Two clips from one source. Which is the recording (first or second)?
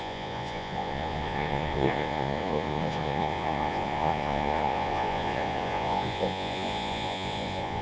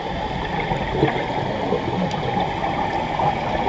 second